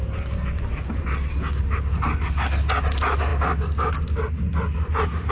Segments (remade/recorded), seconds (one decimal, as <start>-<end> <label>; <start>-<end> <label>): 0.0-5.3 recorded